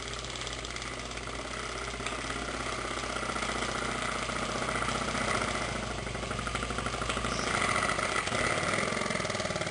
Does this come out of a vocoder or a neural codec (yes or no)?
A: no